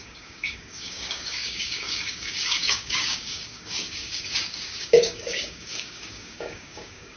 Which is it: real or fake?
fake